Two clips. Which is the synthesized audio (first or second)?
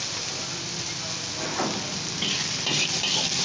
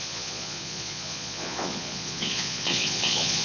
second